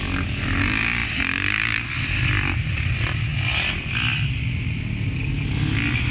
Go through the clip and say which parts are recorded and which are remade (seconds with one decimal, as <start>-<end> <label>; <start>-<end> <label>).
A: 0.0-6.1 recorded